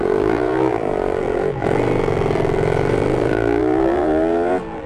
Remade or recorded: remade